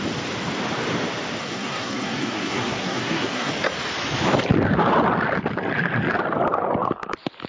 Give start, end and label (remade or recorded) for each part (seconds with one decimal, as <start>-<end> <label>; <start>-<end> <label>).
0.0-1.4 recorded; 1.4-3.5 remade; 3.5-7.5 recorded